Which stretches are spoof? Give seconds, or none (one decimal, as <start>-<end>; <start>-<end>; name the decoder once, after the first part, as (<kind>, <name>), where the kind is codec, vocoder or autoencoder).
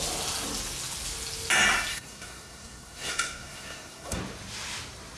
1.9-4.2 (codec, SNAC)